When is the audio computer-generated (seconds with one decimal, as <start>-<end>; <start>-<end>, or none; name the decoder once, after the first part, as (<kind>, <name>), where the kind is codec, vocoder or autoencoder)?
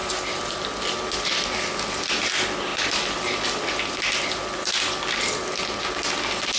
none